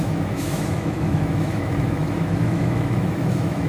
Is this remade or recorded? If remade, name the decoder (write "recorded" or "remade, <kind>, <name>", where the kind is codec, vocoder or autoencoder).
remade, autoencoder, DAC-VAE